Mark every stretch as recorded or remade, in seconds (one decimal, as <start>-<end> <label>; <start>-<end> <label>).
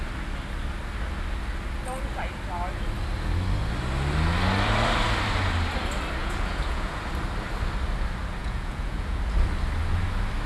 0.0-6.2 recorded; 6.2-7.1 remade; 7.1-8.4 recorded; 8.4-9.2 remade; 9.2-10.5 recorded